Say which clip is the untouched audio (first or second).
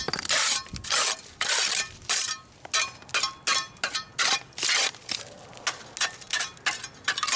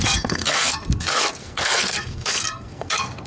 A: first